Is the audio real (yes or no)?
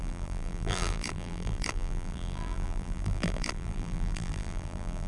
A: no